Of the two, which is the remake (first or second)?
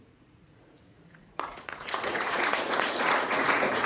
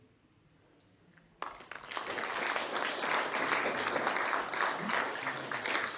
first